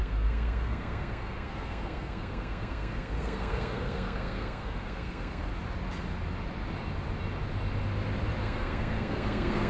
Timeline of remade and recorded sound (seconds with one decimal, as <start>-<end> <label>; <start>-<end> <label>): 0.0-5.5 remade; 5.5-8.4 recorded; 8.4-9.7 remade